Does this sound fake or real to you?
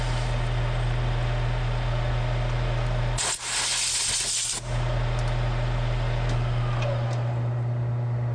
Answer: real